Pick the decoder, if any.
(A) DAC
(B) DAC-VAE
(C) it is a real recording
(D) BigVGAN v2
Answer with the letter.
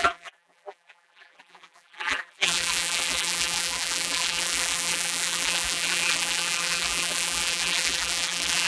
D